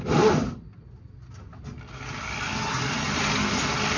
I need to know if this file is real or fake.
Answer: real